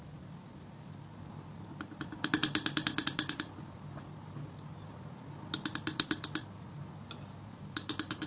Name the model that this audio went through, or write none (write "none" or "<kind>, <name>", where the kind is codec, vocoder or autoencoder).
none